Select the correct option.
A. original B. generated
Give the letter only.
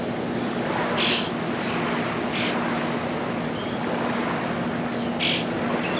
A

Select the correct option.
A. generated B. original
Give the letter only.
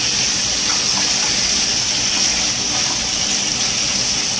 B